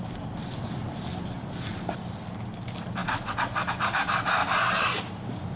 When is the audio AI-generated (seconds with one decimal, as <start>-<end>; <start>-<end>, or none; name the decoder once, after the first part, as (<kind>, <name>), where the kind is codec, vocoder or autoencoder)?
none